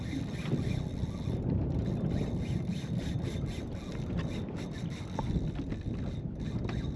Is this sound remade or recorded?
recorded